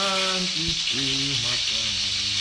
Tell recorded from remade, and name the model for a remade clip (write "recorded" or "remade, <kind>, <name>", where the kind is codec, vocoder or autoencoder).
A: recorded